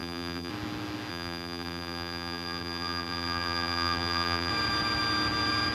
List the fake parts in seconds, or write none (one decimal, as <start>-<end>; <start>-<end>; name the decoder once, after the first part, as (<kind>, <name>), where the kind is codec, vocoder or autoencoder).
0.0-0.5 (vocoder, BigVGAN v2); 1.1-4.5